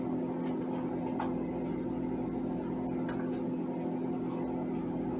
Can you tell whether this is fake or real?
real